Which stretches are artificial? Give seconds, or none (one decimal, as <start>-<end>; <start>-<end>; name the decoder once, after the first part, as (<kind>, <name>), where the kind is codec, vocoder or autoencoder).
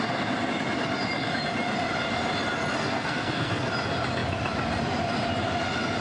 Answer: 2.7-3.7 (codec, SNAC)